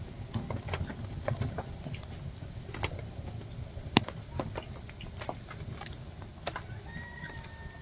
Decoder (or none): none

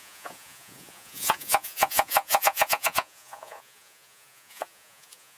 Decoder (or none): vocoder, Vocos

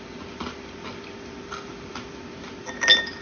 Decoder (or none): none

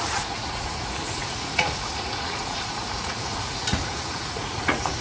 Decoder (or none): vocoder, Vocos